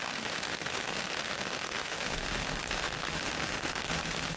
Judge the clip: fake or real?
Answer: fake